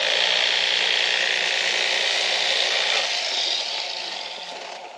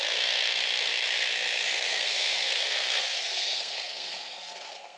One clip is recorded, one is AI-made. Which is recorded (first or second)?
first